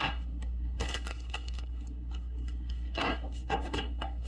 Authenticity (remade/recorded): remade